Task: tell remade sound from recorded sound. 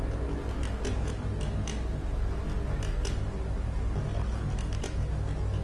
recorded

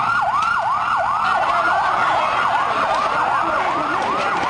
recorded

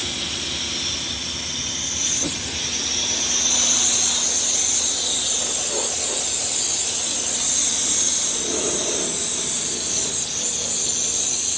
recorded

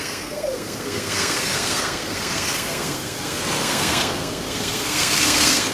remade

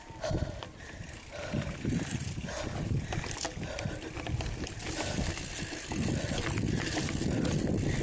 recorded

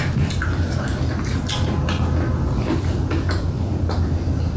recorded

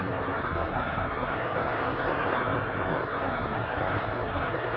remade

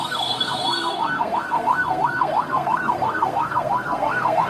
remade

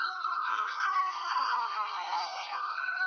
remade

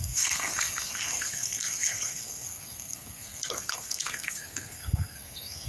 remade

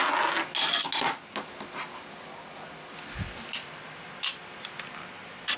recorded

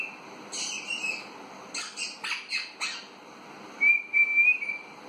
recorded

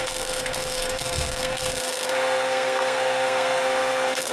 remade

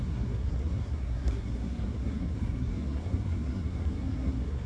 remade